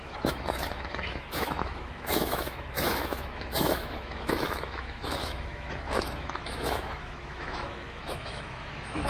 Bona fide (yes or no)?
no